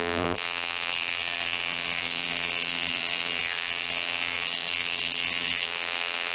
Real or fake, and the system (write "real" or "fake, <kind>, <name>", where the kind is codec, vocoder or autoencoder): fake, vocoder, BigVGAN v2